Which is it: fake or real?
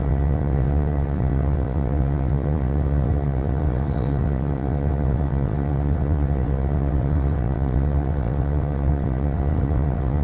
fake